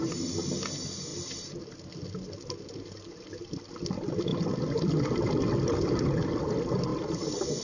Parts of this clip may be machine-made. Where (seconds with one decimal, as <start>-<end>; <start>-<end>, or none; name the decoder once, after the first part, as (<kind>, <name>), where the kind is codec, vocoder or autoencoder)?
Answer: 4.3-5.3 (vocoder, BigVGAN v2); 6.9-7.6